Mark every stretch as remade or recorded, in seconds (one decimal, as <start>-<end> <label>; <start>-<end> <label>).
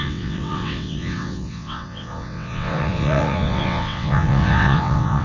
0.0-5.2 remade